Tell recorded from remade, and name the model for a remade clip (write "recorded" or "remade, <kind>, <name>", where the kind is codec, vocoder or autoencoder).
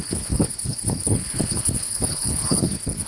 remade, codec, HILCodec